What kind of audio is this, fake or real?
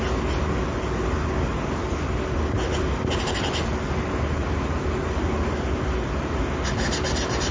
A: real